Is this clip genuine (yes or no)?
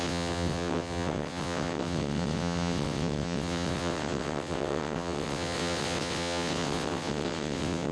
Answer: no